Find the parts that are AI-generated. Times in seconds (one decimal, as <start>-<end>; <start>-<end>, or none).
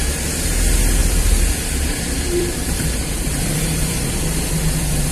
1.0-4.1